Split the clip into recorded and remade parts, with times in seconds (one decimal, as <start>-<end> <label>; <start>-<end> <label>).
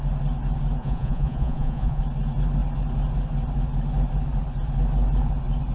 0.0-0.8 recorded; 0.8-2.0 remade; 2.0-5.7 recorded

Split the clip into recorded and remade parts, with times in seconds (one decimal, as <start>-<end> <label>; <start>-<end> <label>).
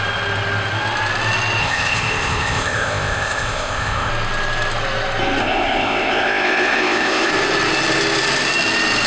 0.0-1.6 recorded; 1.6-4.1 remade; 4.1-5.4 recorded; 5.4-7.3 remade; 7.3-9.1 recorded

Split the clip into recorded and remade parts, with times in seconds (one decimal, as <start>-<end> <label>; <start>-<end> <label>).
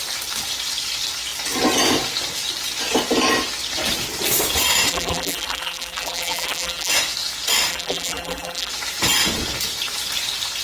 0.0-4.9 recorded; 4.9-6.9 remade; 6.9-7.7 recorded; 7.7-8.7 remade; 8.7-10.6 recorded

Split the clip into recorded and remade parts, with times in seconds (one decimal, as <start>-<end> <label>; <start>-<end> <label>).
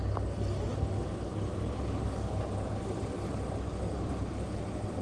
0.0-5.0 recorded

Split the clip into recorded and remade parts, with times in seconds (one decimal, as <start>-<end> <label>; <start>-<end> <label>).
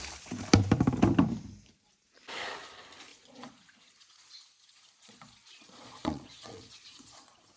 0.0-3.1 recorded; 3.1-7.6 remade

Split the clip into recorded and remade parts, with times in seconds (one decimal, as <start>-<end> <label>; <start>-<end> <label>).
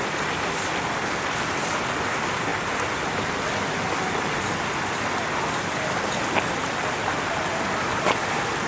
0.0-8.7 recorded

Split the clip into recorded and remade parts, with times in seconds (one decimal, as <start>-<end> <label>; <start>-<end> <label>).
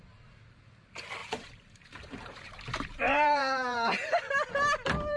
0.0-1.2 recorded; 1.2-4.3 remade; 4.3-5.2 recorded